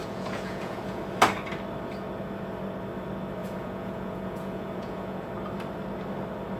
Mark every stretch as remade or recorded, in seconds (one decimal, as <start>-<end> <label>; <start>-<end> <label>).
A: 0.0-1.0 remade; 1.0-3.4 recorded; 3.4-5.3 remade; 5.3-6.6 recorded